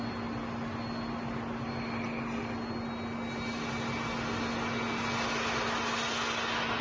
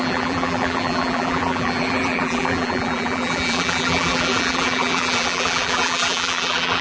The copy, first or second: second